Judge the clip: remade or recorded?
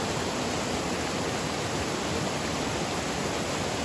recorded